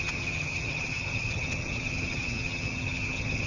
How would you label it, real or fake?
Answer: fake